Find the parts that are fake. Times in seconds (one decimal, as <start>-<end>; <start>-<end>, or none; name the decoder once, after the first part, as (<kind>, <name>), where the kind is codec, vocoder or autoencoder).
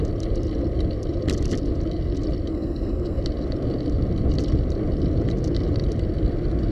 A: 2.5-3.2 (codec, SNAC)